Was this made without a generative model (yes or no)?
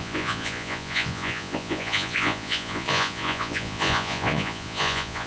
no